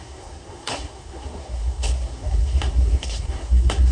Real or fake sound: fake